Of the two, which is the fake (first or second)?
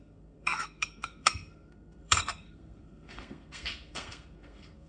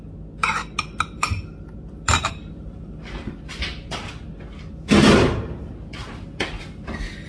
first